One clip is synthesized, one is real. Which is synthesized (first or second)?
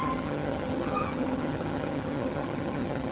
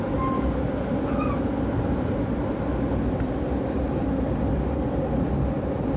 first